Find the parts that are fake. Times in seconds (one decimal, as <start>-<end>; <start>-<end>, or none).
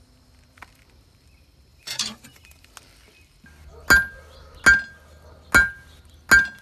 1.7-2.7